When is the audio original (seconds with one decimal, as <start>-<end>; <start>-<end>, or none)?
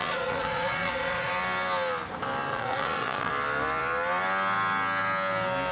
1.3-2.5; 3.3-5.7